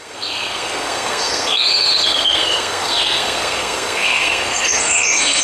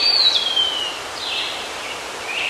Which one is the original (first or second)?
second